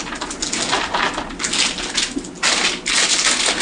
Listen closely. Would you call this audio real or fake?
real